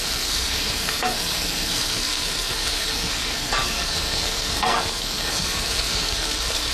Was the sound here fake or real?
fake